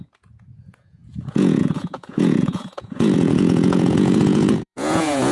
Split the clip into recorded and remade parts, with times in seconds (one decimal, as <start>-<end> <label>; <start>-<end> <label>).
0.0-5.3 remade